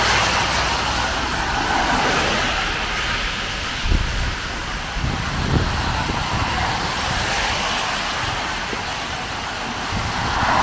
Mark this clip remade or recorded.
recorded